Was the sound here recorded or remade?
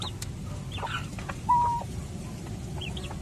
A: recorded